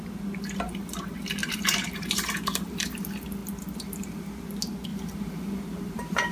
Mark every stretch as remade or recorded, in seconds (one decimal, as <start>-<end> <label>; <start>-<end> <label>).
0.0-1.4 recorded; 1.4-3.0 remade; 3.0-4.9 recorded; 4.9-6.3 remade